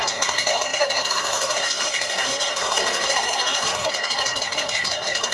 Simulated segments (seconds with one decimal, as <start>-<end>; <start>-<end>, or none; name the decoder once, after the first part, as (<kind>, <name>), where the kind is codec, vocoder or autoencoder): 0.0-5.3 (codec, SNAC)